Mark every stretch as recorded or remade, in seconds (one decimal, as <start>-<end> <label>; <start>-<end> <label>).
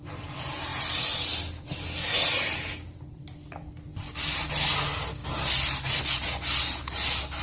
0.0-7.4 recorded